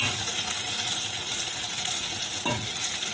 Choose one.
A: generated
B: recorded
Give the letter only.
A